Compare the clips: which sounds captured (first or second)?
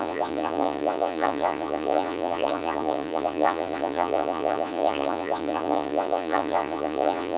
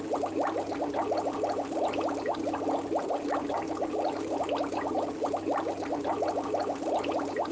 second